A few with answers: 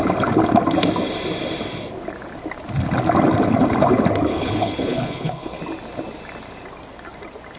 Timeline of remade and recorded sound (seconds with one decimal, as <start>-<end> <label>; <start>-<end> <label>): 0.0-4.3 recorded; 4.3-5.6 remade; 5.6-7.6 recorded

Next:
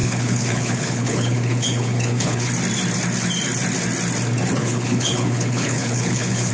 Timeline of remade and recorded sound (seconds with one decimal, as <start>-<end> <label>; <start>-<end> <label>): 0.0-2.5 remade; 2.5-4.6 recorded; 4.6-6.5 remade

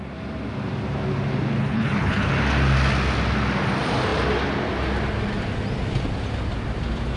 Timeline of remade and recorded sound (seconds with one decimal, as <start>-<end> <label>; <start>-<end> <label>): 0.0-1.6 recorded; 1.6-2.3 remade; 2.3-7.2 recorded